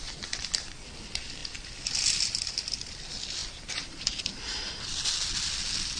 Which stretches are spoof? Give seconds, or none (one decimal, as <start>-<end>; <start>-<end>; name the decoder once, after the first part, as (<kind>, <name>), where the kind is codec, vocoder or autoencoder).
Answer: none

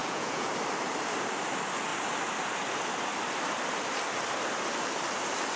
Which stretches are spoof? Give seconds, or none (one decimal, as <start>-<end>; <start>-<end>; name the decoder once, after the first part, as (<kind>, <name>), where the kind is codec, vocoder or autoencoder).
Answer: 0.0-0.5 (vocoder, Vocos)